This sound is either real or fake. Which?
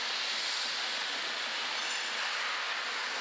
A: real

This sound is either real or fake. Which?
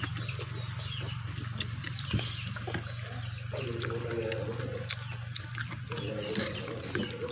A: real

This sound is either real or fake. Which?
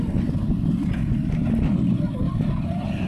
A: real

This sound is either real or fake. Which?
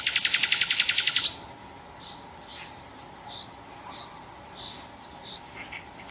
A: real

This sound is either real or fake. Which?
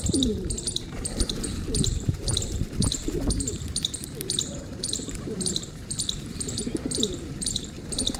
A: fake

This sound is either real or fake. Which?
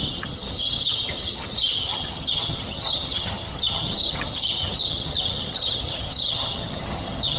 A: fake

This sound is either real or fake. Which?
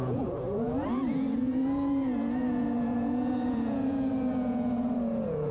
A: fake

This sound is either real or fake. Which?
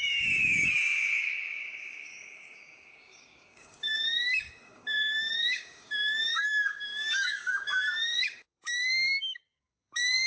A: fake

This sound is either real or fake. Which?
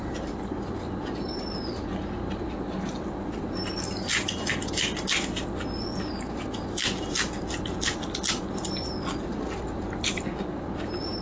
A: real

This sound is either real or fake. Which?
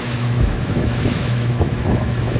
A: fake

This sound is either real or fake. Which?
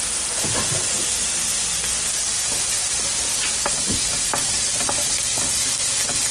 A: real